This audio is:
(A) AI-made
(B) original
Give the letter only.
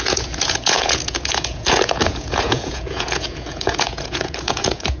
A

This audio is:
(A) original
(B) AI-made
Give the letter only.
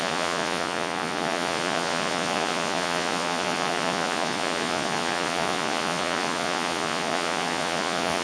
B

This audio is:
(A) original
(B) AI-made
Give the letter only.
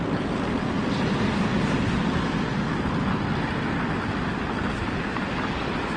A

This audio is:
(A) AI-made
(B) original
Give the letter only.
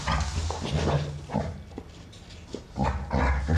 B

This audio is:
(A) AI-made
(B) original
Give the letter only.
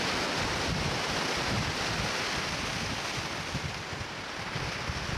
B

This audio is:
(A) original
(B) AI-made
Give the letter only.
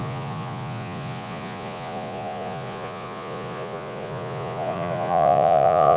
B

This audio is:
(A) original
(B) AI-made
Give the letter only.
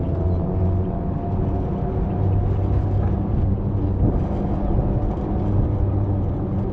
A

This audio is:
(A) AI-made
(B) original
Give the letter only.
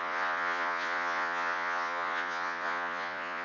A